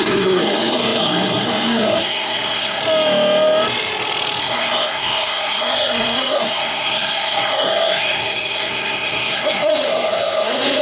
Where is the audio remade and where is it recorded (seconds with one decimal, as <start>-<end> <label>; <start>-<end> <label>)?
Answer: 0.0-2.8 remade; 2.8-4.4 recorded; 4.4-10.8 remade